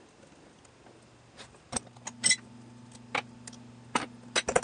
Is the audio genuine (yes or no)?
yes